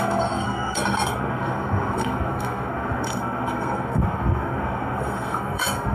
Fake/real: fake